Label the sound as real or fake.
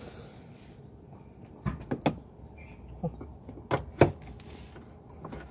real